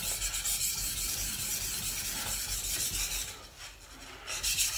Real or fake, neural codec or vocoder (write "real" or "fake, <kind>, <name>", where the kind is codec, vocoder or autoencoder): real